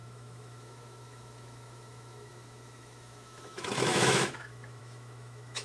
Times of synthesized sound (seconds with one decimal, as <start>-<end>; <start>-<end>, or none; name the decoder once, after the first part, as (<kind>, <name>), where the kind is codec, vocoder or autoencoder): 0.0-5.6 (autoencoder, DAC-VAE)